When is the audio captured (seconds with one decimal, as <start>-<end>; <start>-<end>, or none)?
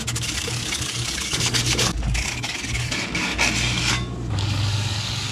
3.3-3.9